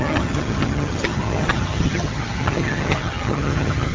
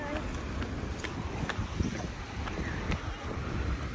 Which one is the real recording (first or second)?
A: second